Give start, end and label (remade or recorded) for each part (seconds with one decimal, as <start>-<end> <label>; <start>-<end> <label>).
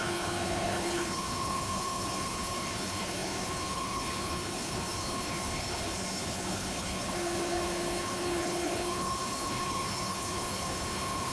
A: 0.0-11.3 remade